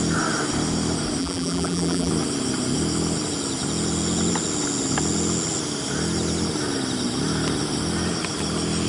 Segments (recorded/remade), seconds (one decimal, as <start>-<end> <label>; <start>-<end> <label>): 0.0-1.2 recorded; 1.2-2.1 remade; 2.1-8.9 recorded